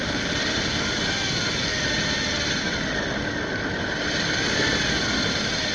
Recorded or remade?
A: recorded